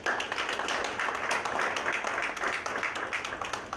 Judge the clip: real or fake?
real